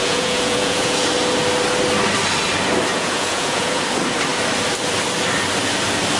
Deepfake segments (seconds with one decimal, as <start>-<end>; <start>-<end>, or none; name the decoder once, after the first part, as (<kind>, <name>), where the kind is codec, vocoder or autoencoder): 0.0-1.1 (vocoder, Vocos); 2.9-3.8